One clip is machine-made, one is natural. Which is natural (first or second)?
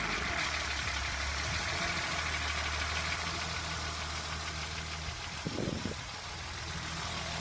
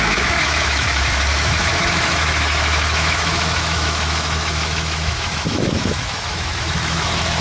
first